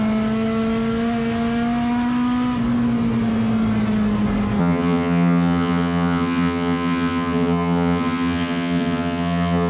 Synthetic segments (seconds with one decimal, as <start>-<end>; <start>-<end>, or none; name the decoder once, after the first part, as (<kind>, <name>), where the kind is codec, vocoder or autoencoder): 4.6-9.7 (vocoder, HiFi-GAN)